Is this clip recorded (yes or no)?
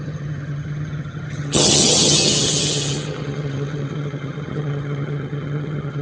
no